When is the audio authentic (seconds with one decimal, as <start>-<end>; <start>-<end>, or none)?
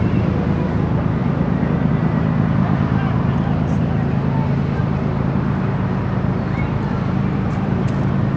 0.0-1.2; 1.9-4.8; 7.8-8.4